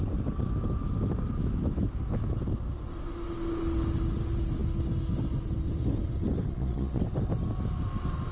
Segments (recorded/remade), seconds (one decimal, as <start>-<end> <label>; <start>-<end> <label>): 0.0-6.5 recorded; 6.5-7.0 remade; 7.0-8.3 recorded

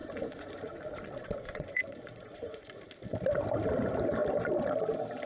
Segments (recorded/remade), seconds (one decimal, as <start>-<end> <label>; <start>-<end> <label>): 0.0-2.7 remade; 2.7-5.3 recorded

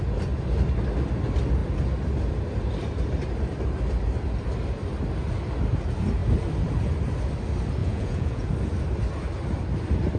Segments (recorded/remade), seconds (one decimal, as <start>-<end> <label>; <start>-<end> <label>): 0.0-7.8 recorded; 7.8-8.5 remade; 8.5-10.2 recorded